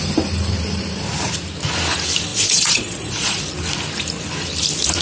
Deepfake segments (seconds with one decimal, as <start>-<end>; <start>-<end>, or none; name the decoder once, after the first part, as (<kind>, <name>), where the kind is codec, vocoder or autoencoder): 2.3-3.4 (vocoder, Vocos)

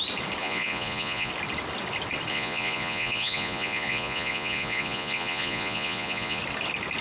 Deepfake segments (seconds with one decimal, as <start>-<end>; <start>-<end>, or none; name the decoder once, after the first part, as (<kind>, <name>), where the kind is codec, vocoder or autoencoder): 0.4-1.3 (vocoder, Vocos); 2.3-6.4

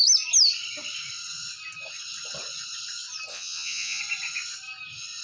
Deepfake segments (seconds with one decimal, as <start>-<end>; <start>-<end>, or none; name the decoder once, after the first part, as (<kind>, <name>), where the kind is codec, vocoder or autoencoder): 3.3-4.0 (vocoder, Vocos)

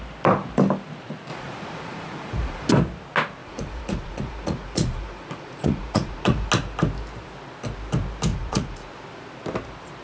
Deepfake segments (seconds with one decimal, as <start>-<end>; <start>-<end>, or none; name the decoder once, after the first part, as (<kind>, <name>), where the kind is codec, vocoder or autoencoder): 1.3-2.7 (vocoder, Vocos); 3.4-6.5; 8.3-8.9